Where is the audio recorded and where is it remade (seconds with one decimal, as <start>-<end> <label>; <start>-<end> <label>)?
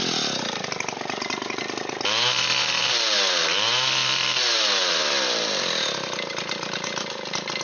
0.0-2.8 recorded; 2.8-3.4 remade; 3.4-4.0 recorded; 4.0-4.9 remade; 4.9-7.6 recorded